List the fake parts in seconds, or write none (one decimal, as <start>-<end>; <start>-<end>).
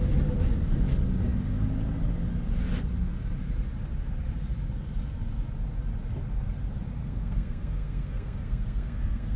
7.0-9.4